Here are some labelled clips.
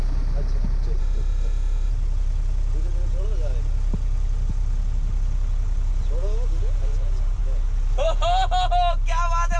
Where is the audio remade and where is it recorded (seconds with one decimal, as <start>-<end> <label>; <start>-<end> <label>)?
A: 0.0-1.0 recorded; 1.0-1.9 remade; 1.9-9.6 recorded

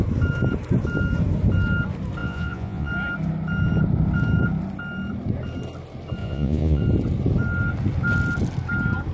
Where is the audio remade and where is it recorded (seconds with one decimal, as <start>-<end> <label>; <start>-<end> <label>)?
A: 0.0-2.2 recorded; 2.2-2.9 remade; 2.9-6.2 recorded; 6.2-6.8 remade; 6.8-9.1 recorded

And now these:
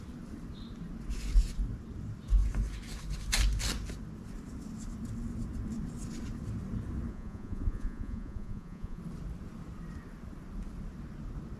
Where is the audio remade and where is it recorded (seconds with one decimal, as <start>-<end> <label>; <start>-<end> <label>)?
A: 0.0-7.1 recorded; 7.1-9.0 remade; 9.0-11.6 recorded

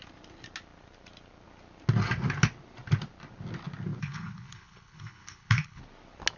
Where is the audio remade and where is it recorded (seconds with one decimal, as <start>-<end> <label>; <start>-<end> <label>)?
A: 0.0-4.0 recorded; 4.0-5.8 remade; 5.8-6.4 recorded

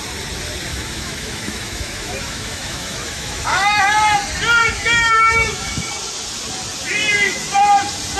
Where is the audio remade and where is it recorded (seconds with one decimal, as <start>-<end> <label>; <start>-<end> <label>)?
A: 0.0-0.7 recorded; 0.7-3.8 remade; 3.8-4.6 recorded; 4.6-5.9 remade; 5.9-8.2 recorded

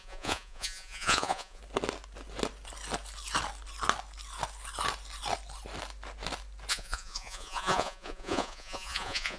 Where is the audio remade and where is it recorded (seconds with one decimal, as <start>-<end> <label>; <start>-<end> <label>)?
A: 0.0-1.6 remade; 1.6-6.7 recorded; 6.7-9.4 remade